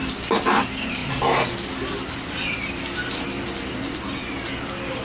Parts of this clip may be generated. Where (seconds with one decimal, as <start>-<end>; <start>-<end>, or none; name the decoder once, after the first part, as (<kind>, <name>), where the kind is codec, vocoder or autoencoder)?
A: none